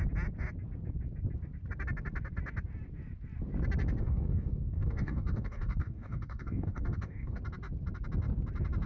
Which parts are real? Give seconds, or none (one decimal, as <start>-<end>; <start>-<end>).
0.0-4.0; 7.4-8.9